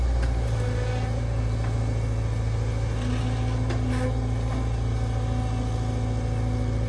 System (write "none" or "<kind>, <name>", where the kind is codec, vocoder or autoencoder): none